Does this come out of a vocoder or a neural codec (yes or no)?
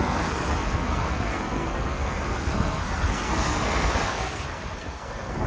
yes